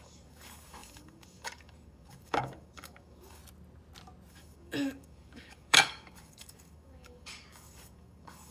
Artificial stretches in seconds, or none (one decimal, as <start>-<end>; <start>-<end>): 0.0-3.4; 4.3-8.5